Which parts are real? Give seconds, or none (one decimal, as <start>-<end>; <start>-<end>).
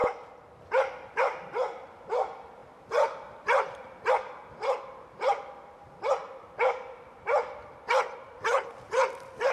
0.0-9.5